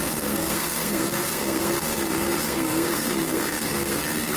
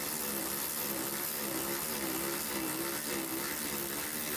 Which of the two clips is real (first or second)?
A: second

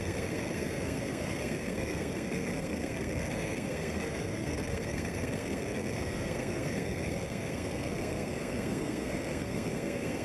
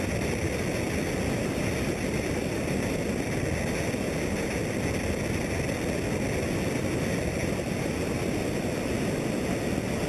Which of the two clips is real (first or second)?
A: second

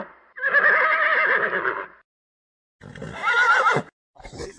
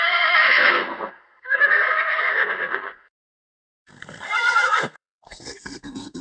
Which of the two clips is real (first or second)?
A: first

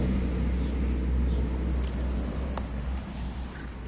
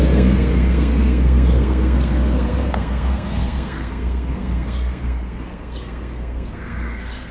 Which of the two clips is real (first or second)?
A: first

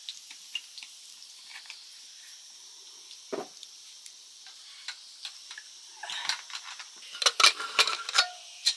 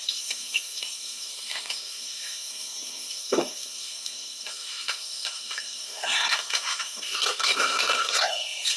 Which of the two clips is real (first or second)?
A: first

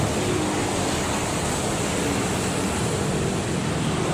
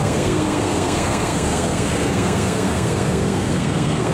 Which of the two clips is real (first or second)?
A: first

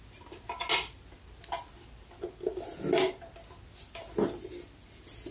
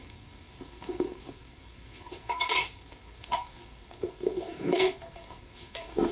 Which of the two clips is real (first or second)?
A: first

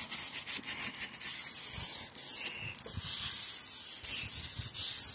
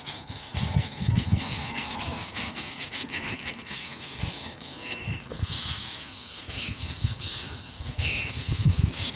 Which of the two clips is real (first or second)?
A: first